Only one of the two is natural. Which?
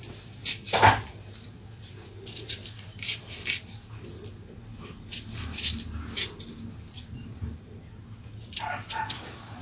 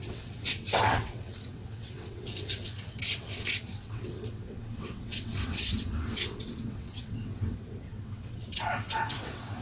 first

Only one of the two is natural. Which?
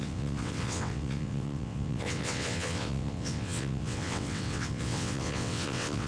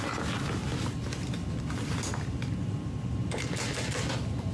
second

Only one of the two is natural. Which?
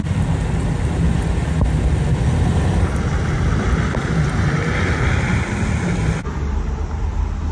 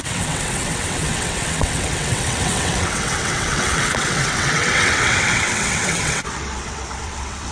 first